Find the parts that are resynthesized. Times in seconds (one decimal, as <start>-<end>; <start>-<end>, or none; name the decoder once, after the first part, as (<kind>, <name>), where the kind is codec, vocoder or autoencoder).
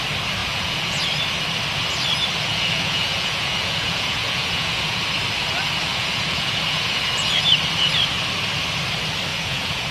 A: 0.4-1.0 (vocoder, Vocos); 2.5-5.0; 5.9-7.0; 9.3-9.9